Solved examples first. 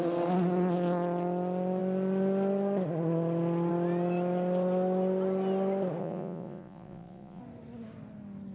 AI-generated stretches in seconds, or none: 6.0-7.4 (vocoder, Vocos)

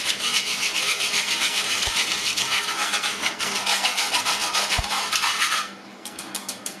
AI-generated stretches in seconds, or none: 0.0-6.8 (codec, SNAC)